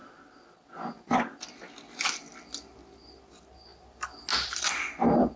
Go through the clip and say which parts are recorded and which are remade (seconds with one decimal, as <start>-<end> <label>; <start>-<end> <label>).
0.0-5.4 recorded